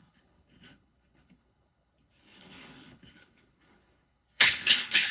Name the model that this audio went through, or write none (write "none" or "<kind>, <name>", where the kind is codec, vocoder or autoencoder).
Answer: codec, HILCodec